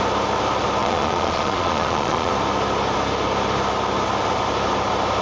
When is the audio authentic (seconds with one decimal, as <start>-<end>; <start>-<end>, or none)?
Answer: 0.0-0.8; 2.3-5.2